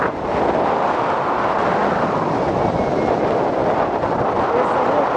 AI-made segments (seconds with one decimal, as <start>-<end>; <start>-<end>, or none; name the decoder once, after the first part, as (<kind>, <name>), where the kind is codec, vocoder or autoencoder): none